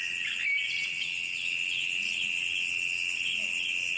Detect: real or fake real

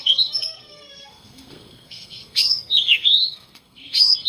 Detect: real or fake fake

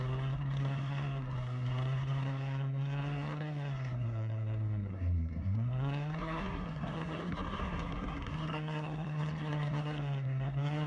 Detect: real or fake fake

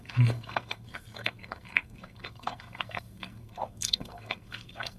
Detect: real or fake fake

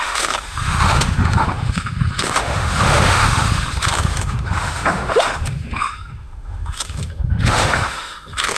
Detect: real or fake fake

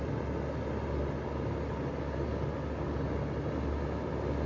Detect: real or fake real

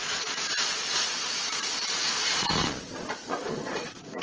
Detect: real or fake fake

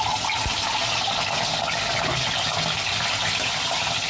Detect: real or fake real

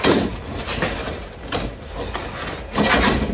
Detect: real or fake real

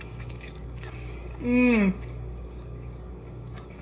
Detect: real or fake fake